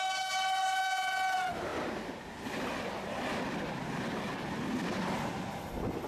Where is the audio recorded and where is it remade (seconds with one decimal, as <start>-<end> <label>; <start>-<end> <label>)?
0.0-6.1 recorded